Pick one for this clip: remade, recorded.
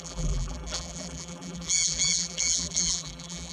remade